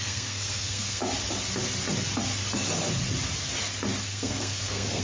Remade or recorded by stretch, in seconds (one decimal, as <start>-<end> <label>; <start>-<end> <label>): 0.0-1.0 remade; 1.0-4.0 recorded; 4.0-5.0 remade